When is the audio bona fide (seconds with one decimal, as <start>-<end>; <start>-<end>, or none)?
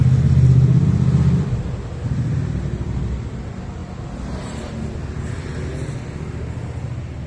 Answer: 0.0-7.3